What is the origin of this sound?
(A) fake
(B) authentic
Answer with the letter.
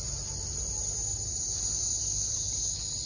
B